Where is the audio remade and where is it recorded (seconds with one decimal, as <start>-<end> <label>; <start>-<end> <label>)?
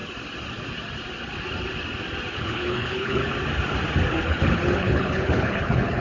0.0-2.3 recorded; 2.3-3.2 remade; 3.2-4.1 recorded; 4.1-6.0 remade